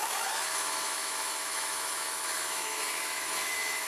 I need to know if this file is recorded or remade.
remade